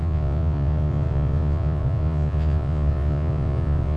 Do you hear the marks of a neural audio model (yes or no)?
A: yes